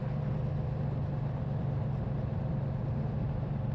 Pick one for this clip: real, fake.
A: real